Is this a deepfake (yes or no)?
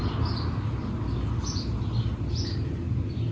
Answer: no